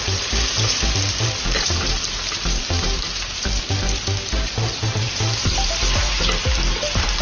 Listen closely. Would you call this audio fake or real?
fake